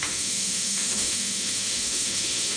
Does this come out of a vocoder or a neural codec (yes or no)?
yes